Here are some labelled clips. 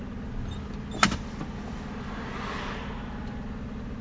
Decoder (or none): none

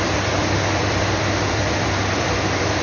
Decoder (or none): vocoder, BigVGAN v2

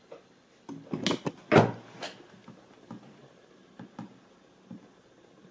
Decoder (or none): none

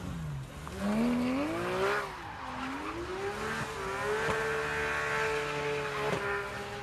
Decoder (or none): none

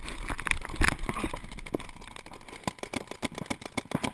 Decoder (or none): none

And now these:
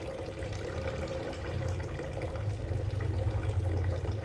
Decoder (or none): none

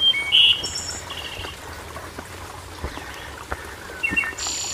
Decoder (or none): none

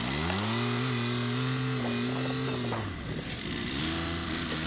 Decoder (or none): none